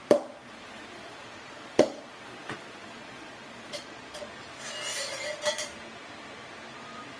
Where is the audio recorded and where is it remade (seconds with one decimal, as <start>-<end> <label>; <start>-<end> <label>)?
0.0-0.4 recorded; 0.4-4.2 remade; 4.2-7.2 recorded

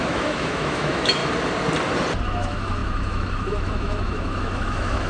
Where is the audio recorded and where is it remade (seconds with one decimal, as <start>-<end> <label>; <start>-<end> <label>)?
0.0-1.2 remade; 1.2-2.2 recorded; 2.2-5.1 remade

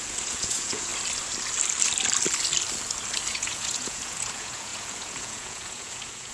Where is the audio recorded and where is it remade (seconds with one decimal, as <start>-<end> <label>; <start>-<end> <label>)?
0.0-0.9 remade; 0.9-3.3 recorded; 3.3-6.3 remade

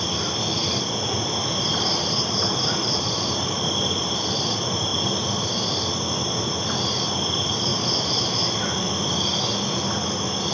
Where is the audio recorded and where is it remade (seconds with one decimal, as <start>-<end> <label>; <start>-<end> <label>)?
0.0-1.7 recorded; 1.7-3.6 remade; 3.6-7.7 recorded; 7.7-8.9 remade; 8.9-10.5 recorded

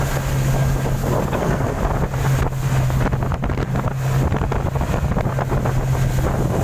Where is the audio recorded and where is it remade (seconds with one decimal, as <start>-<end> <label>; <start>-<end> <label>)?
0.0-1.0 recorded; 1.0-1.8 remade; 1.8-6.6 recorded